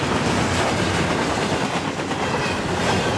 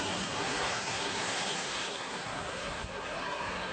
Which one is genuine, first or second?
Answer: first